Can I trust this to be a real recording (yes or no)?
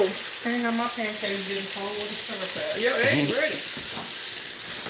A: yes